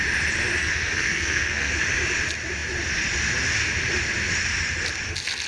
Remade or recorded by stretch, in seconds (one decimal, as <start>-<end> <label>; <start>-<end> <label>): 0.0-0.6 recorded; 0.6-1.7 remade; 1.7-5.5 recorded